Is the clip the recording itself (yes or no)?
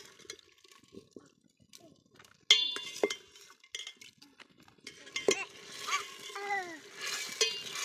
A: yes